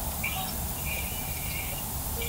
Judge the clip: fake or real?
real